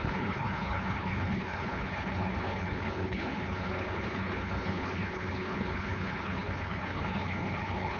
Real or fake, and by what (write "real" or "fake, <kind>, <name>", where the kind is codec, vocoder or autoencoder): fake, codec, HILCodec